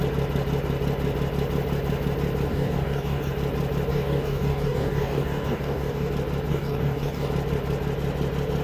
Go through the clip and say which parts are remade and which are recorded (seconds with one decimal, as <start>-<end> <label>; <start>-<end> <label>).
0.0-2.5 recorded; 2.5-3.3 remade; 3.3-3.9 recorded; 3.9-6.1 remade; 6.1-6.5 recorded; 6.5-7.3 remade; 7.3-8.6 recorded